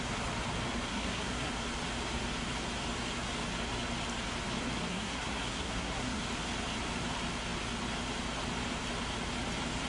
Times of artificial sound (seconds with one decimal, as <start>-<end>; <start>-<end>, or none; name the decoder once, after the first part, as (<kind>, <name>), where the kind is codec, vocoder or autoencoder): 0.9-1.5 (codec, SNAC); 4.9-6.2